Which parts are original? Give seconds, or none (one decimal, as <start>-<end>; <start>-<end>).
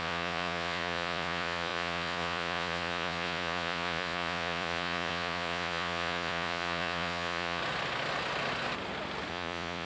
7.6-9.3